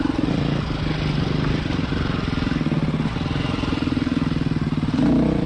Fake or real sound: real